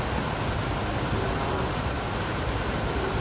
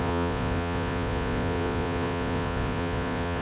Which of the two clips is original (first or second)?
first